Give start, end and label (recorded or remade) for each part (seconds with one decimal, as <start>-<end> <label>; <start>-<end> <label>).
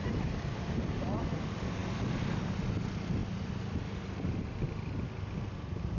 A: 0.0-0.9 remade; 0.9-6.0 recorded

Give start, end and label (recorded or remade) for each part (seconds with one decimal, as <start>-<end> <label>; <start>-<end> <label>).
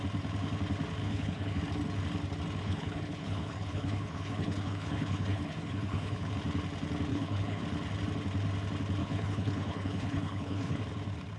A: 0.0-1.0 recorded; 1.0-1.6 remade; 1.6-2.6 recorded; 2.6-6.3 remade; 6.3-7.1 recorded; 7.1-7.6 remade; 7.6-9.0 recorded; 9.0-10.8 remade; 10.8-11.4 recorded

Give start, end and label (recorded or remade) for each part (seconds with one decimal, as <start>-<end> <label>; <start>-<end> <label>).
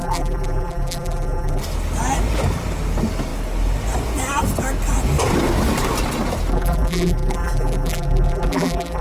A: 0.0-1.6 remade; 1.6-6.5 recorded; 6.5-9.0 remade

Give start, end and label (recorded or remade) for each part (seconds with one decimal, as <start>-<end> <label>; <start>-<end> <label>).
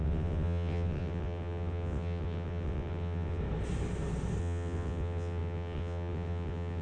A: 0.0-3.4 remade; 3.4-4.4 recorded; 4.4-6.8 remade